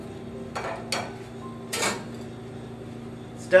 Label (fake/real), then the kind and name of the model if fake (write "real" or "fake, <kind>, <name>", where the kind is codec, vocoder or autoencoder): real